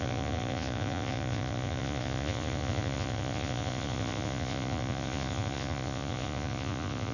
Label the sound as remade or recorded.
remade